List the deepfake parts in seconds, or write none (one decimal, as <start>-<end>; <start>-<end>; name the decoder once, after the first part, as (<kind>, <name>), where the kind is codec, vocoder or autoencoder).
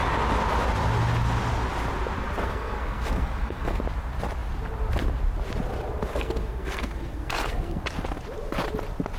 2.4-3.8 (codec, SNAC); 6.1-7.8